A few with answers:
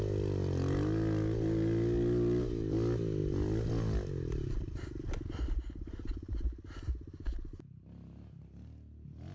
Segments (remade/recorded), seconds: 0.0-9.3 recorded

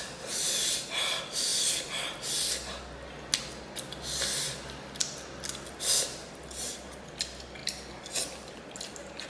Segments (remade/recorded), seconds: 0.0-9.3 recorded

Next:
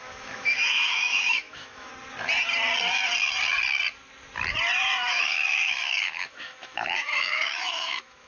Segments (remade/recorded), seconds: 0.0-1.9 remade; 1.9-5.1 recorded; 5.1-8.3 remade